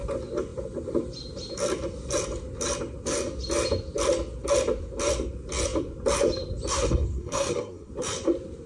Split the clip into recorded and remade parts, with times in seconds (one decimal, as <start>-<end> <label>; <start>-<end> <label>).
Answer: 0.0-6.7 recorded; 6.7-7.9 remade; 7.9-8.7 recorded